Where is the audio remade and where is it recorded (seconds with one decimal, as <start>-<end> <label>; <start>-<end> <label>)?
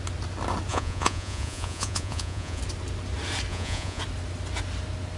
0.0-0.7 recorded; 0.7-2.6 remade; 2.6-3.5 recorded; 3.5-4.0 remade; 4.0-5.2 recorded